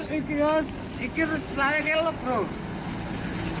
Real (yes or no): yes